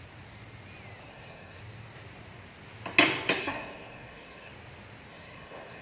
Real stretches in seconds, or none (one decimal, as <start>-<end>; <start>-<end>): 0.0-1.1; 1.6-3.4; 4.5-5.1